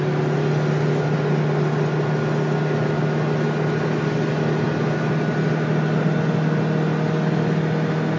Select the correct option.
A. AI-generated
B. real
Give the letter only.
B